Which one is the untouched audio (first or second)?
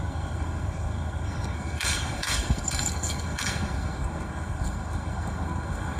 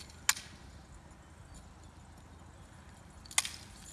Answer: second